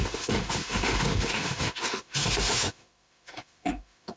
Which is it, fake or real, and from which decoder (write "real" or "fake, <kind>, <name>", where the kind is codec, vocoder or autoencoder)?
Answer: fake, autoencoder, DAC-VAE